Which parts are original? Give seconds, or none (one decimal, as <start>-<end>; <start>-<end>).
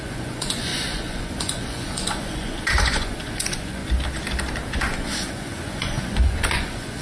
3.8-4.7